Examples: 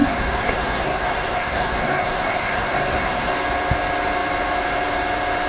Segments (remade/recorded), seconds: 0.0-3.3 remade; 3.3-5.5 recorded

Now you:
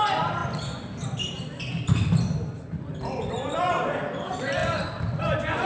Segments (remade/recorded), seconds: 0.0-5.7 recorded

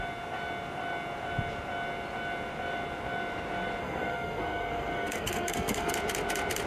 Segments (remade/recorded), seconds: 0.0-3.8 recorded; 3.8-5.9 remade; 5.9-6.7 recorded

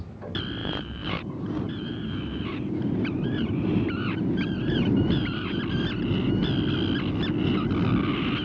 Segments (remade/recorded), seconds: 0.0-0.6 recorded; 0.6-5.6 remade; 5.6-8.4 recorded

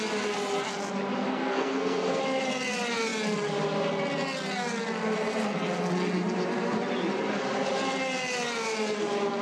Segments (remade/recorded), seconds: 0.0-1.2 recorded; 1.2-2.2 remade; 2.2-9.4 recorded

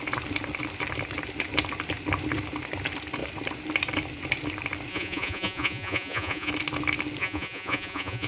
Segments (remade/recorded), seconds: 0.0-4.9 recorded; 4.9-6.5 remade; 6.5-7.2 recorded; 7.2-8.3 remade